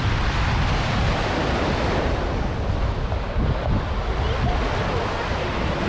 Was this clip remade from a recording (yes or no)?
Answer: no